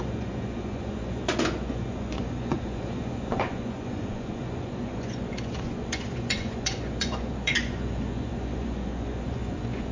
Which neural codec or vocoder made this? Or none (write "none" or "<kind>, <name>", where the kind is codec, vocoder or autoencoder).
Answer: vocoder, Vocos